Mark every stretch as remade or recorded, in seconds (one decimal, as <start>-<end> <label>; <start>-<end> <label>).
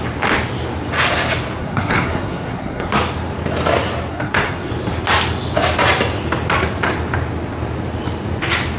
0.0-1.6 recorded; 1.6-2.9 remade; 2.9-4.1 recorded; 4.1-4.7 remade; 4.7-8.8 recorded